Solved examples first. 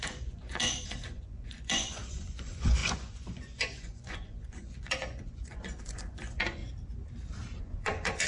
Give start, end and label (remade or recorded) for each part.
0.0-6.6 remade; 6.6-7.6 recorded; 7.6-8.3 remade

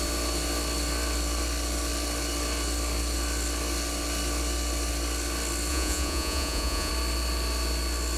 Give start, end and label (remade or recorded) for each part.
0.0-5.7 recorded; 5.7-6.9 remade; 6.9-8.2 recorded

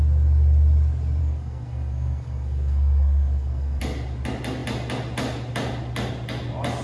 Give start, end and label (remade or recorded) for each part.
0.0-1.2 recorded; 1.2-3.8 remade; 3.8-6.8 recorded

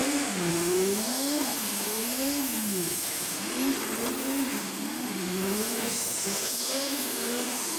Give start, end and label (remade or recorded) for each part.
0.0-3.5 remade; 3.5-4.2 recorded; 4.2-7.8 remade

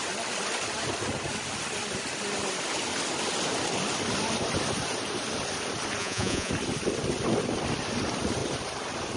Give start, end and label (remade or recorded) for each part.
0.0-6.0 recorded; 6.0-6.5 remade; 6.5-9.2 recorded

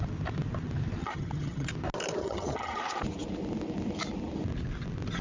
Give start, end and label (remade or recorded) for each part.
0.0-1.0 recorded; 1.0-1.7 remade; 1.7-2.2 recorded; 2.2-2.8 remade; 2.8-5.2 recorded

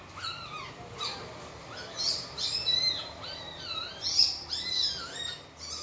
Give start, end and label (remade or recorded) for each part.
0.0-1.6 recorded; 1.6-5.1 remade; 5.1-5.8 recorded

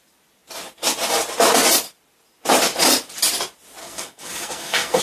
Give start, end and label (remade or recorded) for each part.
0.0-3.8 recorded; 3.8-5.0 remade